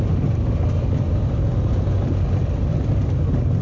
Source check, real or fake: real